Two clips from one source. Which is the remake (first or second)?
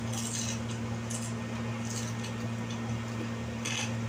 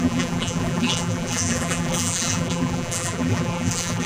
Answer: second